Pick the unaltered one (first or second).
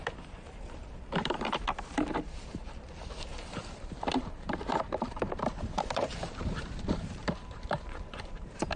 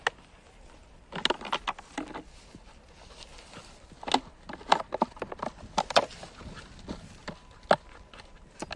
second